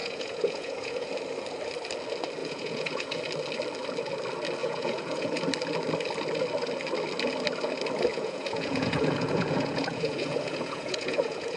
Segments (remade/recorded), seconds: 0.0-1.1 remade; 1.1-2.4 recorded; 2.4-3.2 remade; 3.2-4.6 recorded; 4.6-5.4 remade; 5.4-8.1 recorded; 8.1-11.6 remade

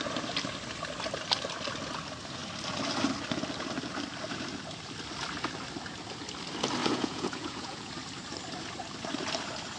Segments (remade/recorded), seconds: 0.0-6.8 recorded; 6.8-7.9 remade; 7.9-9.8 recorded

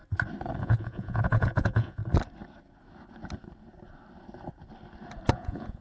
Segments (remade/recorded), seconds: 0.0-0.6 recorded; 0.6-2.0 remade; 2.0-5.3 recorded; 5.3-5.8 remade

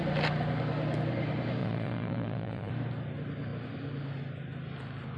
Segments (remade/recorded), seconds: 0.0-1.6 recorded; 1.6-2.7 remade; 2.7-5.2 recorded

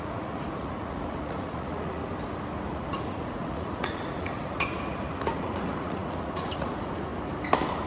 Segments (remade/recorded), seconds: 0.0-2.0 remade; 2.0-2.7 recorded; 2.7-7.1 remade; 7.1-7.9 recorded

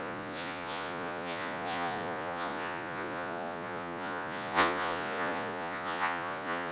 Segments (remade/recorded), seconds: 0.0-6.7 remade

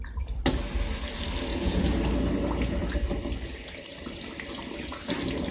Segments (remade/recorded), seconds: 0.0-1.5 recorded; 1.5-2.0 remade; 2.0-5.5 recorded